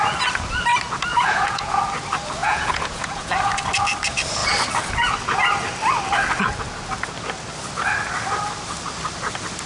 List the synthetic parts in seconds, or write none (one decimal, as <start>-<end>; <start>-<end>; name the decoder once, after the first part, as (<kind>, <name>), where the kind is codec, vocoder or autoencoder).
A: 1.1-1.8 (vocoder, Vocos); 2.4-3.3